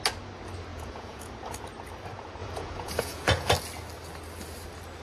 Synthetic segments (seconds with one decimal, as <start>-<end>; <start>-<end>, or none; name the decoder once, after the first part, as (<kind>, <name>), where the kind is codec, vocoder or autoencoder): 0.7-1.3 (vocoder, Vocos); 2.4-3.5